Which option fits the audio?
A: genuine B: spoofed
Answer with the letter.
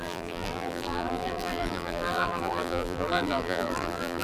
B